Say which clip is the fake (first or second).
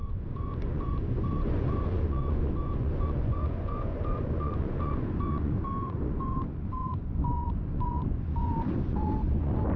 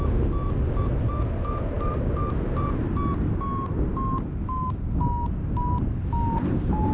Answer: first